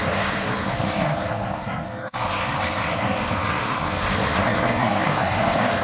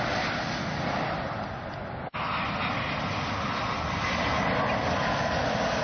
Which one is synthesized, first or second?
first